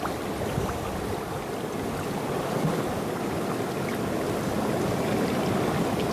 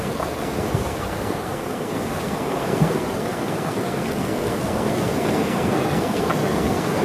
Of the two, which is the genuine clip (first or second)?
first